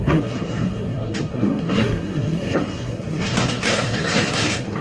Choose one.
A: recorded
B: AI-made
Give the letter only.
B